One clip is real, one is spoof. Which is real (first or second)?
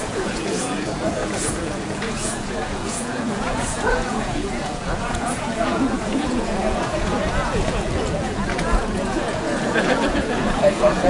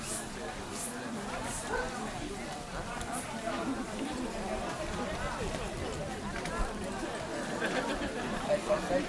second